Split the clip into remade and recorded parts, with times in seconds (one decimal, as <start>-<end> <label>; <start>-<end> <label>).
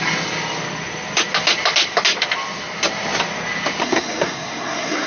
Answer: 0.0-3.8 recorded; 3.8-5.1 remade